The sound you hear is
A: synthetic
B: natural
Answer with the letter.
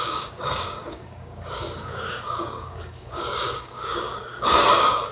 A